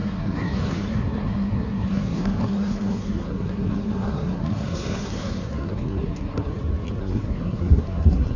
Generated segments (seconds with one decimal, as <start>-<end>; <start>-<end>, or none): 0.0-6.5; 7.0-8.4